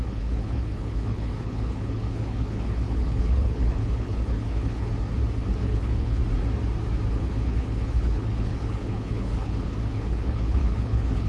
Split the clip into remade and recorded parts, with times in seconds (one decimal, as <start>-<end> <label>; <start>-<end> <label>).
0.0-4.9 remade; 4.9-5.6 recorded; 5.6-6.2 remade; 6.2-7.1 recorded; 7.1-11.3 remade